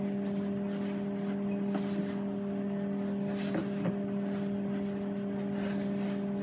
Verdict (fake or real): real